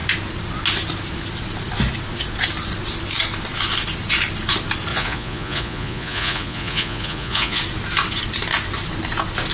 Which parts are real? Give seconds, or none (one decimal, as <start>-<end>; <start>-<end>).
0.0-4.9; 7.6-9.5